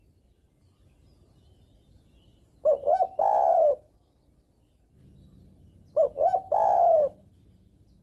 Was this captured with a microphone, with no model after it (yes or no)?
yes